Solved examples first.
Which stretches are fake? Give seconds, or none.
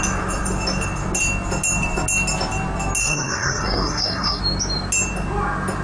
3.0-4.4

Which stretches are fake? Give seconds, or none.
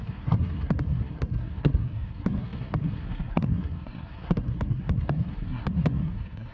0.0-6.5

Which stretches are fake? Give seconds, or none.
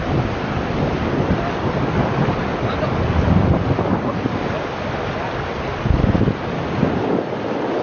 none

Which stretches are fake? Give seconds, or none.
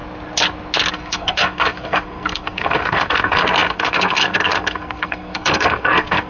0.9-6.3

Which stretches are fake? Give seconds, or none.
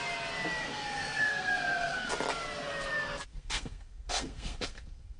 0.6-2.1; 3.3-5.2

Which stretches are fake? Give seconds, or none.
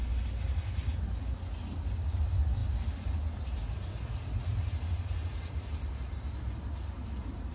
none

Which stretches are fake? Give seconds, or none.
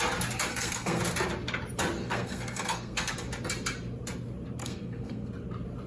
0.5-1.0; 2.0-3.1; 4.6-5.3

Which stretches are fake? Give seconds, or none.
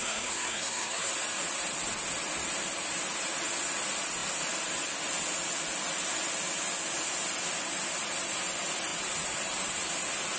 0.0-1.1